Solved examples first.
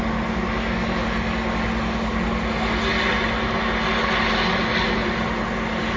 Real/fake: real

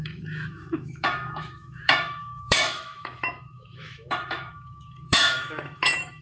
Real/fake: fake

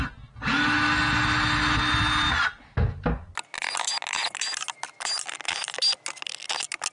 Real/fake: real